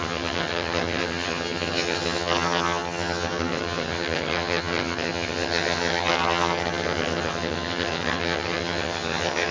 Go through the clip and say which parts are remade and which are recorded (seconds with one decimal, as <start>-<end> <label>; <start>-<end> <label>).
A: 0.0-9.5 remade